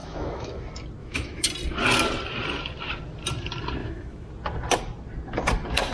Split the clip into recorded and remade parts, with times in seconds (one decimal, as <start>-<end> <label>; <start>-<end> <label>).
0.0-0.6 remade; 0.6-1.0 recorded; 1.0-1.5 remade; 1.5-3.8 recorded; 3.8-4.3 remade; 4.3-5.9 recorded